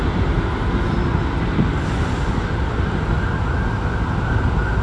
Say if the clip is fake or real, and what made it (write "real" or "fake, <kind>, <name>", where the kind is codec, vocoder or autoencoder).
real